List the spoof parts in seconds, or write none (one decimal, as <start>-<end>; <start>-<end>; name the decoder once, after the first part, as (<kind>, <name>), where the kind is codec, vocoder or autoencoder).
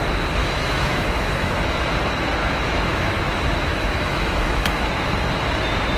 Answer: 0.4-1.5 (autoencoder, DAC-VAE); 2.4-3.2; 3.7-4.9